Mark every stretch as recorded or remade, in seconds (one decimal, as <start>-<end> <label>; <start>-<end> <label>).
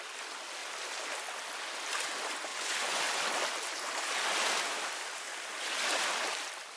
0.0-2.5 recorded; 2.5-3.0 remade; 3.0-6.8 recorded